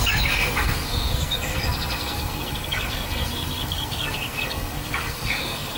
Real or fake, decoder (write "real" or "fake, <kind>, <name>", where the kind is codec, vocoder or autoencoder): fake, codec, SNAC